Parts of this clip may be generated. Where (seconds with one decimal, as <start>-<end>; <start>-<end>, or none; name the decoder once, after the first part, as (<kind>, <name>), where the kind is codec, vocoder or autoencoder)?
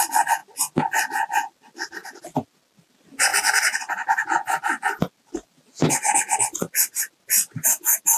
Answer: none